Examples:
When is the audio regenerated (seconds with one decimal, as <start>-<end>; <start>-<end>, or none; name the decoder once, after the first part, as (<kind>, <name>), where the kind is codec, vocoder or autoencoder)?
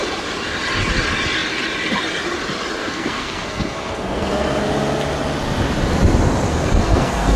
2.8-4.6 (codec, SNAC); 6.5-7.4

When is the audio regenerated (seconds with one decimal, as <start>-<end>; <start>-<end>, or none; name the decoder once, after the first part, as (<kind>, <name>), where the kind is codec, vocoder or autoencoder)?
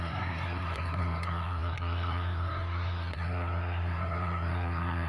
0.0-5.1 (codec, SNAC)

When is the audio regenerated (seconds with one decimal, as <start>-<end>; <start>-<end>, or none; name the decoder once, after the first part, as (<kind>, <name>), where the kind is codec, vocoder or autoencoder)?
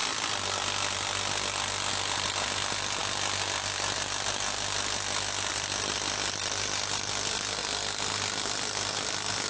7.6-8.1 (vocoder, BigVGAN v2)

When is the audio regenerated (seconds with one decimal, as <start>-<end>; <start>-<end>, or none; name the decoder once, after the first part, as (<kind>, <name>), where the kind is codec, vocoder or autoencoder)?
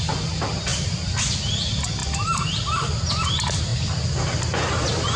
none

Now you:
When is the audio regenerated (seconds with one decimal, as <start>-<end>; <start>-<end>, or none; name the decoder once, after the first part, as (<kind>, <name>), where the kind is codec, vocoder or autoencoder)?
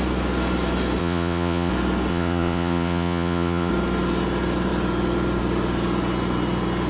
1.0-1.7 (vocoder, Vocos); 2.1-3.7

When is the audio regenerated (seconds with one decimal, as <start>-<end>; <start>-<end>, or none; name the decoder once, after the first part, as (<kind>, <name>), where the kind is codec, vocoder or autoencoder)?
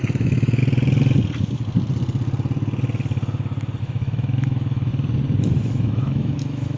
0.0-0.6 (autoencoder, DAC-VAE); 3.8-4.9; 5.4-6.8